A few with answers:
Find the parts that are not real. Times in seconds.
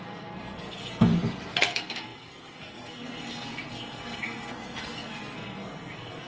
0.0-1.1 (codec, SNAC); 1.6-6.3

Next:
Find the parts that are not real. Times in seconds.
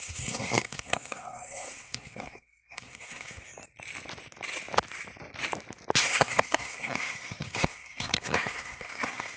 0.0-3.6 (codec, SNAC); 6.0-9.4